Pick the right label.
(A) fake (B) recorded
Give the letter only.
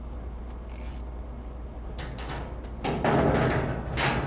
B